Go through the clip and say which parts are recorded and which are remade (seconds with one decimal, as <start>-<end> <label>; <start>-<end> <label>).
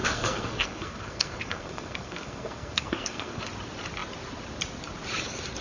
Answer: 0.0-3.4 remade; 3.4-5.6 recorded